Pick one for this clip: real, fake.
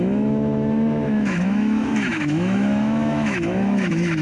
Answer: fake